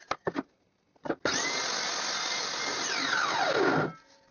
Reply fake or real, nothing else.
real